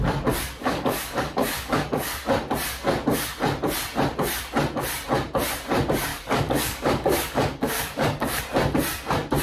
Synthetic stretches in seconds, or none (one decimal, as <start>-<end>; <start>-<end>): 0.6-2.2; 6.1-8.4

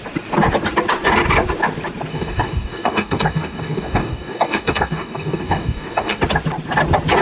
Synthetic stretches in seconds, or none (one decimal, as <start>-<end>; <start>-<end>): 2.1-6.2

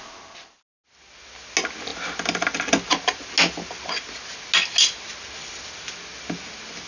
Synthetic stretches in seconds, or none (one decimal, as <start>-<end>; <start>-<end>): none

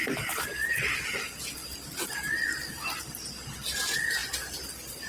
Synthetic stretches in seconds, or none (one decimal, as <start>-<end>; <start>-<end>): none

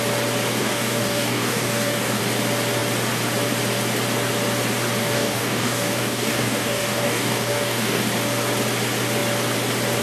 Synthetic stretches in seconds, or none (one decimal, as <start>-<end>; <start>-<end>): 0.6-2.2; 5.0-8.0

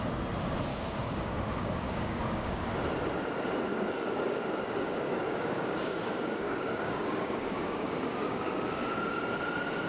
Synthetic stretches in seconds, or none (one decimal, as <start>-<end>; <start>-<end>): 0.7-2.7; 3.7-8.8